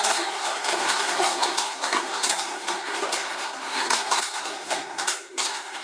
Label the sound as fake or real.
fake